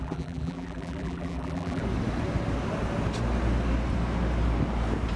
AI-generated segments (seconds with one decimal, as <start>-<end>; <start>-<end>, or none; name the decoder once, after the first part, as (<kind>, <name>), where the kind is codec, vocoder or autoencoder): 0.0-1.8 (vocoder, BigVGAN v2)